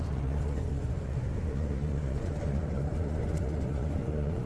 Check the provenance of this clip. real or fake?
fake